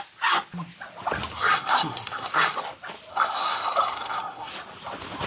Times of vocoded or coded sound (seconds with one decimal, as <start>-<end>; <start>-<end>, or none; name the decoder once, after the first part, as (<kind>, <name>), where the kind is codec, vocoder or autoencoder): 1.4-2.6 (codec, SNAC); 3.1-4.5